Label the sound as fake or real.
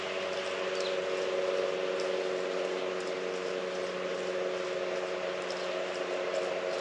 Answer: real